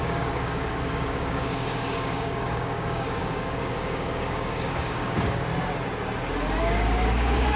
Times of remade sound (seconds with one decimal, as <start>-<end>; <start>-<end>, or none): 0.0-5.5; 6.6-7.6

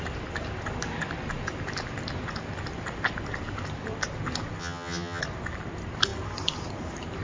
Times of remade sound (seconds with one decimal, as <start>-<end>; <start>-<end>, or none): 4.6-5.2

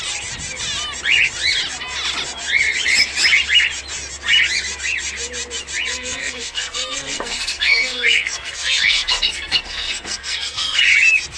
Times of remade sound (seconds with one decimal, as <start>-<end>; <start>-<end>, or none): 5.9-10.8

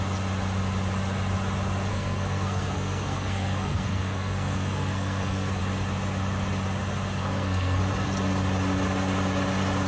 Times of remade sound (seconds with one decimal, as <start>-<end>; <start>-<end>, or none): 1.9-5.6; 7.2-7.8

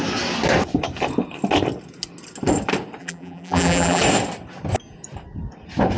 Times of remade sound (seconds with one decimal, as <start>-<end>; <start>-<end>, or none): 3.0-4.0

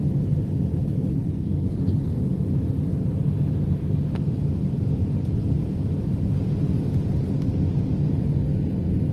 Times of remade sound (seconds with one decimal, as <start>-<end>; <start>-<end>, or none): 0.7-2.2